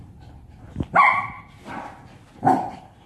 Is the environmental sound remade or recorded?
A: recorded